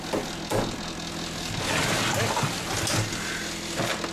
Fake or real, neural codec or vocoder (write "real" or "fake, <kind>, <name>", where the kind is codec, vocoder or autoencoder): real